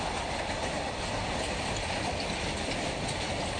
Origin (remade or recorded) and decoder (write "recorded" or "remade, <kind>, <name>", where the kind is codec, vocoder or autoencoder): recorded